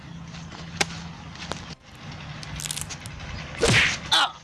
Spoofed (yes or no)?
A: no